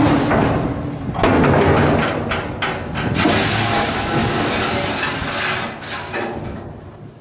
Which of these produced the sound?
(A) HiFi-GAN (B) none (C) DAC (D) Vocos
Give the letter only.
B